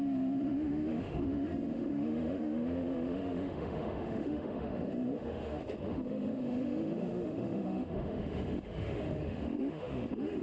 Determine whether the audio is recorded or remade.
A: remade